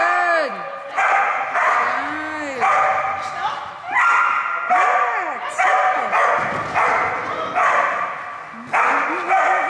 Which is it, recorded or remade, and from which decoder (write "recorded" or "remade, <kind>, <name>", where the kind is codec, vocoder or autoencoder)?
recorded